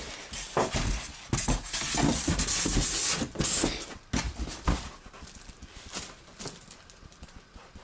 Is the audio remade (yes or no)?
no